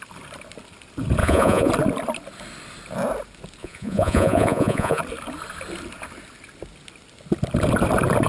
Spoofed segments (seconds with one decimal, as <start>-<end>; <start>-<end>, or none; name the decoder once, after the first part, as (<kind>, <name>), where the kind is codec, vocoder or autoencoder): 1.2-1.7 (vocoder, Vocos); 3.6-5.0

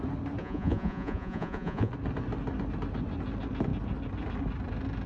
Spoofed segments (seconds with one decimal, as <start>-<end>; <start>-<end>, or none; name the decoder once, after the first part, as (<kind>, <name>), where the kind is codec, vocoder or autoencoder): 0.4-1.9 (vocoder, Vocos)

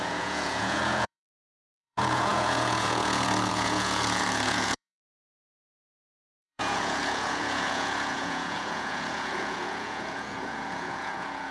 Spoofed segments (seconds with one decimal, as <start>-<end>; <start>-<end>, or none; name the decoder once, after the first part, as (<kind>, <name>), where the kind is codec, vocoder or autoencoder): 0.0-11.5 (vocoder, Vocos)

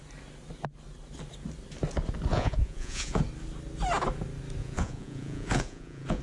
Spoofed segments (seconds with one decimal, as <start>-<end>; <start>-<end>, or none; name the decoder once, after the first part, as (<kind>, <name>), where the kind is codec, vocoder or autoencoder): 2.3-3.2 (vocoder, Vocos); 4.6-6.2

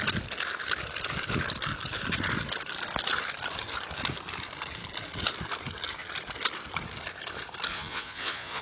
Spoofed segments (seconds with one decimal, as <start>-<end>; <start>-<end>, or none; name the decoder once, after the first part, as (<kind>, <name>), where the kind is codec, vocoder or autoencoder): 7.7-8.6 (vocoder, Vocos)

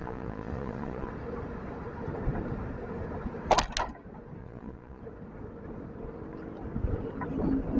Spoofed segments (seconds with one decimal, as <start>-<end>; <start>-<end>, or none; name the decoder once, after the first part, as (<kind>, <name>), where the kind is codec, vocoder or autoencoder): 0.0-1.1 (vocoder, Vocos); 4.4-5.0